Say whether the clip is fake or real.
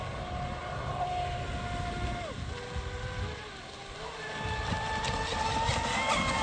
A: real